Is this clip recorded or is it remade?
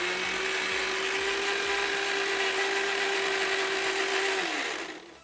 recorded